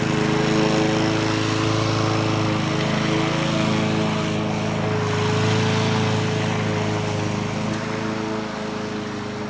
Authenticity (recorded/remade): recorded